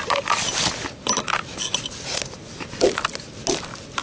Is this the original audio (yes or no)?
yes